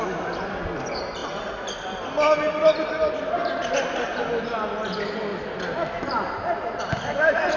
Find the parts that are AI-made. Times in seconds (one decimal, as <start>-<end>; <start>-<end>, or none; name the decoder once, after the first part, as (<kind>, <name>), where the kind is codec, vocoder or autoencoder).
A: none